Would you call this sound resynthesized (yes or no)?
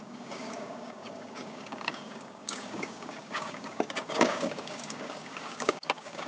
yes